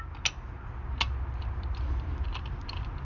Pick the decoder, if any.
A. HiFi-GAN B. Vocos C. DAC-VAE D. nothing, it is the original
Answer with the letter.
D